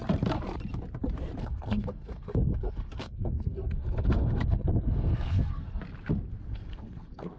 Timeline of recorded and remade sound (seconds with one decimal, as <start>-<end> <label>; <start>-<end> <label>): 0.0-1.4 recorded; 1.4-5.8 remade; 5.8-6.5 recorded; 6.5-7.4 remade